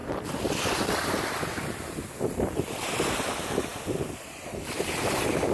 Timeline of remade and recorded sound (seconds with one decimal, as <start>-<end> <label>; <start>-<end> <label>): 0.0-3.3 remade; 3.3-3.7 recorded; 3.7-5.1 remade; 5.1-5.5 recorded